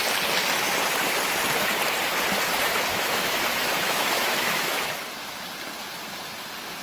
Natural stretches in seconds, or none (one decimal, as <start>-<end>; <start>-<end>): 0.0-2.9; 4.9-6.8